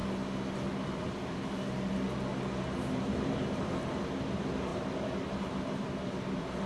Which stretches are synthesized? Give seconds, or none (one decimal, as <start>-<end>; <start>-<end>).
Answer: none